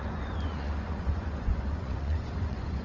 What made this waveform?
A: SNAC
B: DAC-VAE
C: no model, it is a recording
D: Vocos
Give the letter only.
D